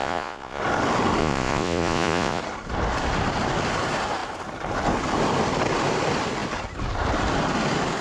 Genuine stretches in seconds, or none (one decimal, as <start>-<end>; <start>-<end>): 0.6-1.2; 2.4-8.0